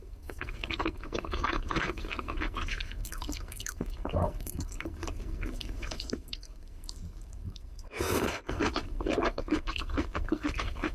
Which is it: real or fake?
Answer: fake